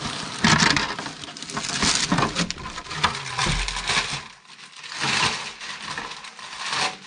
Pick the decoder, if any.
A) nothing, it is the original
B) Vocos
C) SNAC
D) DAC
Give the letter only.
A